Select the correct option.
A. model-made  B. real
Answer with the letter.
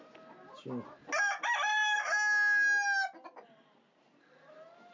B